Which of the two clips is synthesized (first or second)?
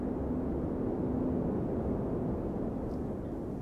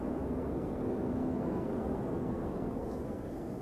second